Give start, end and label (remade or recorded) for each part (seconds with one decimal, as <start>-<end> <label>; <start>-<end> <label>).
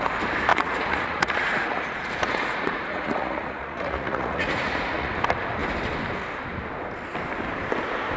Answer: 0.0-0.5 recorded; 0.5-5.1 remade; 5.1-8.2 recorded